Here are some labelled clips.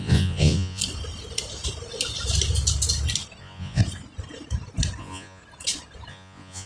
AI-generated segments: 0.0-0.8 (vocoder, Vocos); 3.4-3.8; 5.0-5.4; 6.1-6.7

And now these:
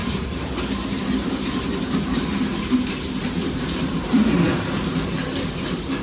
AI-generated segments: 0.0-4.5 (vocoder, BigVGAN v2); 5.6-6.0

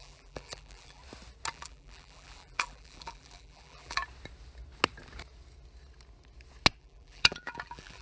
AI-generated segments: 0.0-1.0 (vocoder, BigVGAN v2); 1.5-4.0; 6.8-8.0

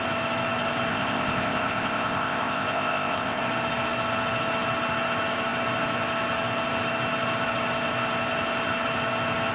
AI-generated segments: 0.9-3.4 (codec, ZipCodec)